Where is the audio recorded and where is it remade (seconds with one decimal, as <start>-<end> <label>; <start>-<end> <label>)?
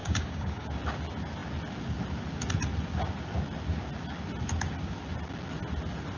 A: 0.0-0.7 remade; 0.7-6.2 recorded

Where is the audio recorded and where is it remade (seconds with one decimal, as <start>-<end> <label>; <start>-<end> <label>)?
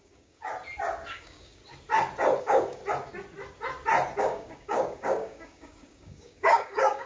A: 0.0-0.5 remade; 0.5-1.1 recorded; 1.1-1.6 remade; 1.6-2.4 recorded; 2.4-2.8 remade; 2.8-4.2 recorded; 4.2-7.1 remade